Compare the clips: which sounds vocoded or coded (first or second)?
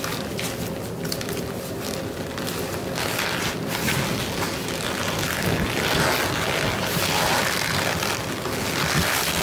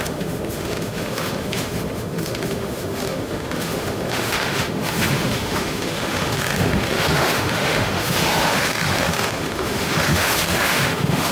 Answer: second